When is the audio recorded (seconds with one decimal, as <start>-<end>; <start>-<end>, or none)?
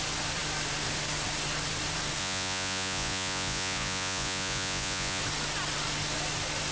0.0-2.2; 5.2-6.7